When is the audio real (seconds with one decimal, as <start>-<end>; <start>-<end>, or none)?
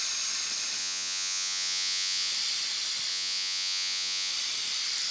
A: 0.0-0.8; 2.3-3.1; 4.3-5.1